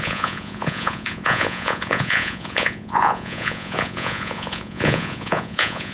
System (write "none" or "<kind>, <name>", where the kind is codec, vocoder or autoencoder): vocoder, Vocos